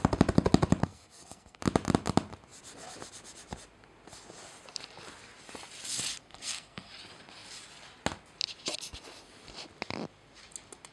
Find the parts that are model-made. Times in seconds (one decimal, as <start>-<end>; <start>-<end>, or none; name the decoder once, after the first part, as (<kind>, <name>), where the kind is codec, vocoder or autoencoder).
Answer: 0.8-1.6 (codec, SNAC); 6.2-6.9